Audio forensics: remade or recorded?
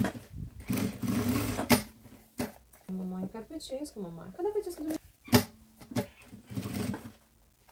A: recorded